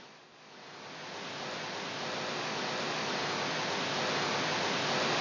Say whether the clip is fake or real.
real